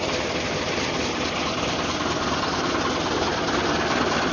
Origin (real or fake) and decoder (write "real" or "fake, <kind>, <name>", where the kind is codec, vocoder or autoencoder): real